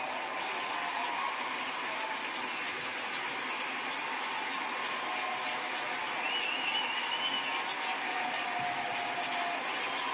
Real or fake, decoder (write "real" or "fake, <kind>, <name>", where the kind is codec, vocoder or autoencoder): real